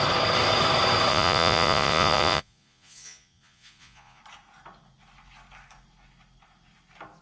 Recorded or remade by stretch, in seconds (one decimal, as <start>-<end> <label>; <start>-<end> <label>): 0.0-1.1 recorded; 1.1-4.2 remade; 4.2-7.2 recorded